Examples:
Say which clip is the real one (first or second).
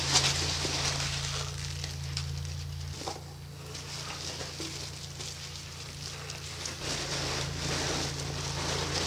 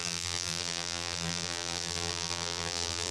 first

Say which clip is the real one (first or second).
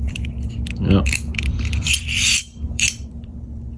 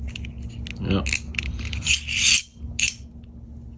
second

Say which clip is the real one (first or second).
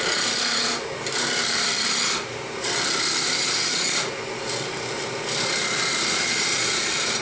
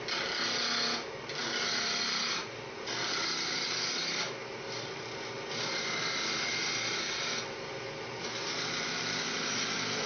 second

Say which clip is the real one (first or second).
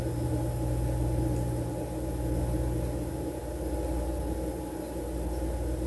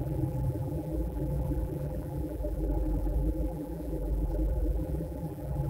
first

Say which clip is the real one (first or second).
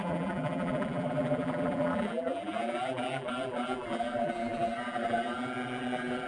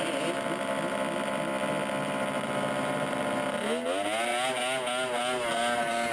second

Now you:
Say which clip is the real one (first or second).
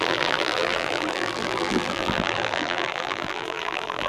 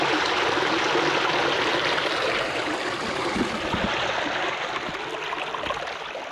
second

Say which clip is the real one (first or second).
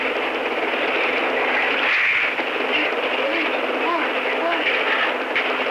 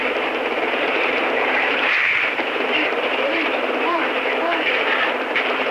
first